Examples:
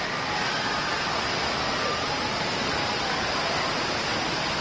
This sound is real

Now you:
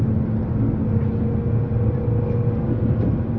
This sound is real